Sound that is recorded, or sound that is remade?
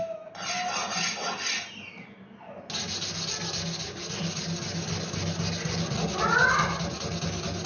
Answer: recorded